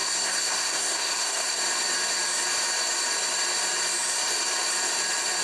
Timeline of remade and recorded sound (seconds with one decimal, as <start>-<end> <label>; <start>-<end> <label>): 0.0-1.6 remade; 1.6-5.4 recorded